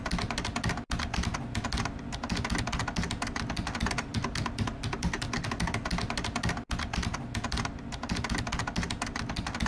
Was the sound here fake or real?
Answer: real